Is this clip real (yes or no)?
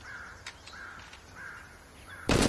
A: yes